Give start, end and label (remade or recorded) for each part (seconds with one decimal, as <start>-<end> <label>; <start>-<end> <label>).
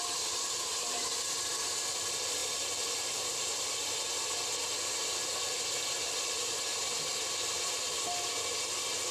0.0-6.7 recorded; 6.7-7.3 remade; 7.3-9.1 recorded